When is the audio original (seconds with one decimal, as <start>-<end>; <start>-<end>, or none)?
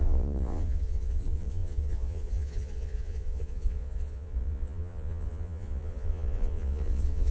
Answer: none